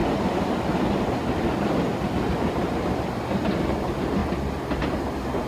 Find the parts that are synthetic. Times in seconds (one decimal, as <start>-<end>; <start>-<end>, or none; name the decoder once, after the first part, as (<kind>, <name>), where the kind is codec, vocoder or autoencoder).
none

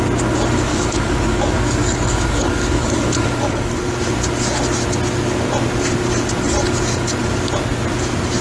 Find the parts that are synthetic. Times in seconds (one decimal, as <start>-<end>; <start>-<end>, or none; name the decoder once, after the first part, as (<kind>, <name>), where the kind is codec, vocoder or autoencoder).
0.7-3.8 (codec, DAC)

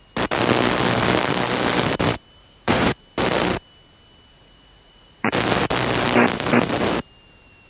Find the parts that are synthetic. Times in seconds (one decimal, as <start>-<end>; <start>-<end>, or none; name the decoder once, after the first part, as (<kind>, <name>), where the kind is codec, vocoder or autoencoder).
2.4-3.0 (vocoder, Vocos); 4.3-5.3

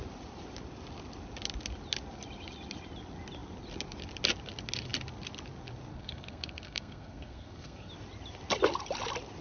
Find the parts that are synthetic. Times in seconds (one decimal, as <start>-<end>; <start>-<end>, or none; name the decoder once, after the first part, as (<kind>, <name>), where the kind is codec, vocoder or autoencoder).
5.9-7.9 (codec, SNAC)